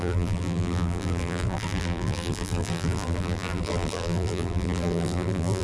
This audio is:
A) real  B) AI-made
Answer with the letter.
B